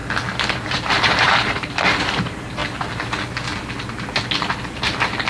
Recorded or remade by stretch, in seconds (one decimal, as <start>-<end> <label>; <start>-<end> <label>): 0.0-0.5 recorded; 0.5-2.6 remade; 2.6-4.8 recorded; 4.8-5.3 remade